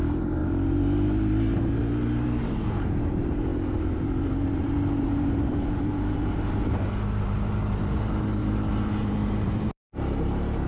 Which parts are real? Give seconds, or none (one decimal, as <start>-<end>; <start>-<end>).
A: none